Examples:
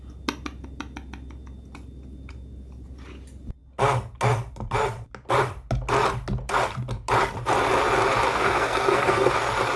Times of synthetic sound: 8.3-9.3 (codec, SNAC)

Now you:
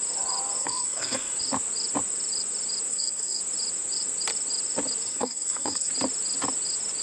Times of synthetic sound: 0.6-1.3 (codec, SNAC); 2.9-3.4; 5.1-5.9

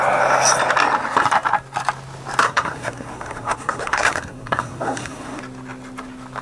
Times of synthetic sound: 2.4-5.4 (codec, SNAC)

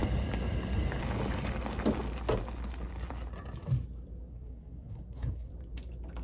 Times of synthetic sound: 4.3-5.5 (codec, SNAC)